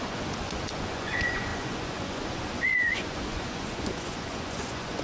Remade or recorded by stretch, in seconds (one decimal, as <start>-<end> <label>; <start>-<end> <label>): 0.0-5.0 remade